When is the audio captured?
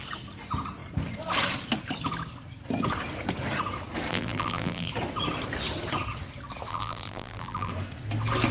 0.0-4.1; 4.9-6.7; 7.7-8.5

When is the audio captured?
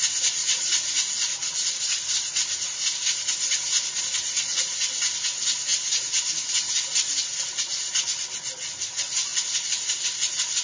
0.0-10.6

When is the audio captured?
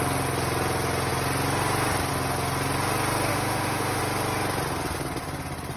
0.0-3.3; 4.0-5.8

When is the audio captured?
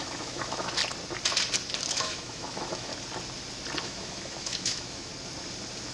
0.8-1.9; 2.9-3.8; 5.1-5.9